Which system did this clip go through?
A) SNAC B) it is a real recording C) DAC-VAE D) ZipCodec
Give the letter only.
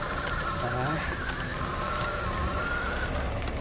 B